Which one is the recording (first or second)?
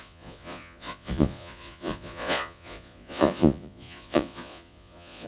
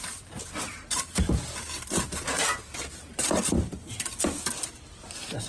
second